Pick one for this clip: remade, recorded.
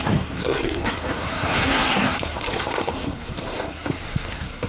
remade